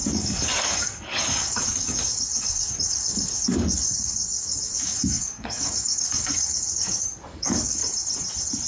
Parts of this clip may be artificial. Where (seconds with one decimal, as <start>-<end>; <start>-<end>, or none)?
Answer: 0.0-7.8